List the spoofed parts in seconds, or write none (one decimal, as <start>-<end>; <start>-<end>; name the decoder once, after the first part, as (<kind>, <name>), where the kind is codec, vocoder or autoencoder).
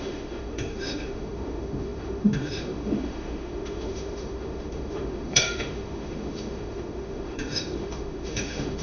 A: 0.0-8.8 (autoencoder, DAC-VAE)